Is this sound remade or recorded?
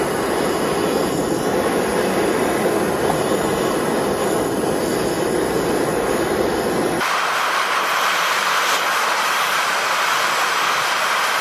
recorded